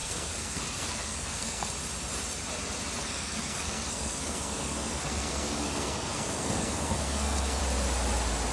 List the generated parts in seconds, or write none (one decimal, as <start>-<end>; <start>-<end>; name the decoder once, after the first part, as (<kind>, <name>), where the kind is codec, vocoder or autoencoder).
0.0-1.7 (codec, SNAC); 3.0-7.6